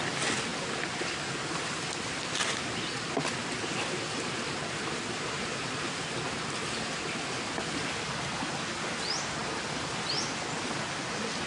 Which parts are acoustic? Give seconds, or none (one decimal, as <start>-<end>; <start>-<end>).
0.0-11.5